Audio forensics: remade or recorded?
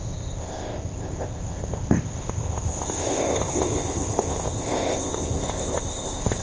remade